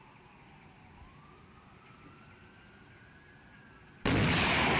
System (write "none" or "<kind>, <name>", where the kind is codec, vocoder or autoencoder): none